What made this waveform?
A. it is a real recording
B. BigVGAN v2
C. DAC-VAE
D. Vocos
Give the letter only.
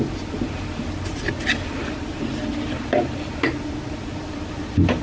B